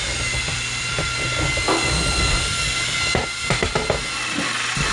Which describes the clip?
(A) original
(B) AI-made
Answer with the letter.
A